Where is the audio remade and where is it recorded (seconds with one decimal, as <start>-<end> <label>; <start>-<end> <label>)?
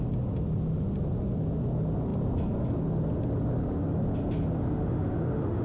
0.0-4.6 recorded; 4.6-5.6 remade